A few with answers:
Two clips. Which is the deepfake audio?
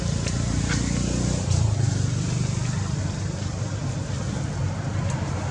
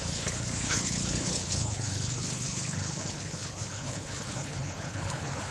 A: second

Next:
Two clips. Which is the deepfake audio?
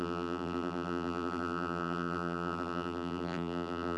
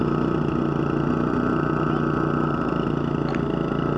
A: first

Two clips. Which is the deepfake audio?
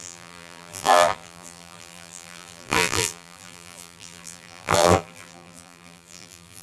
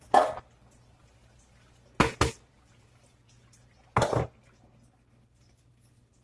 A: first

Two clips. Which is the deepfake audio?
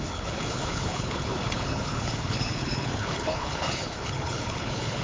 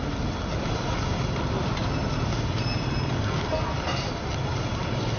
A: first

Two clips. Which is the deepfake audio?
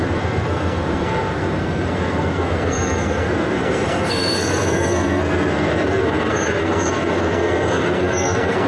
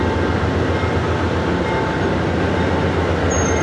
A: first